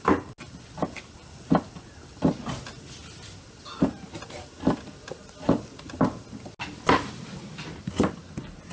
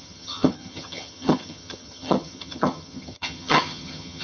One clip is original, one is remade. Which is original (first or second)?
first